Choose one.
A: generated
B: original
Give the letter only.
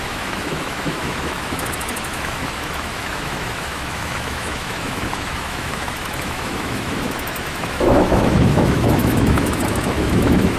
A